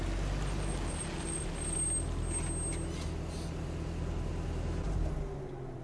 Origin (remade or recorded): recorded